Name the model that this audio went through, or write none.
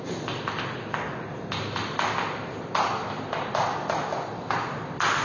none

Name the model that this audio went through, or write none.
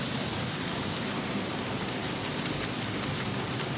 none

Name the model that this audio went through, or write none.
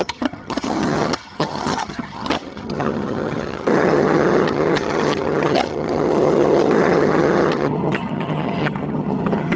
vocoder, HiFi-GAN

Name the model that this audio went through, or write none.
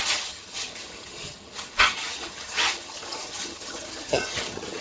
vocoder, HiFi-GAN